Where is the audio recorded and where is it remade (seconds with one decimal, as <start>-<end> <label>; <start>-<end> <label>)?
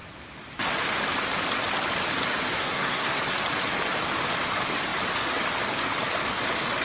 0.0-2.6 recorded; 2.6-3.2 remade; 3.2-6.8 recorded